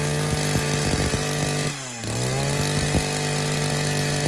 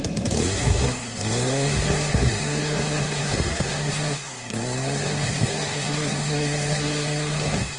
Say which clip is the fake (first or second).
second